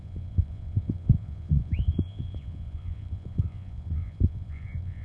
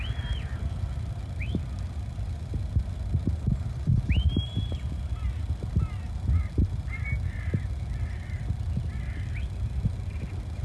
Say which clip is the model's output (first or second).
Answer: first